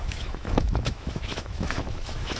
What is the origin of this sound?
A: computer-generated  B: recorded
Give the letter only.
A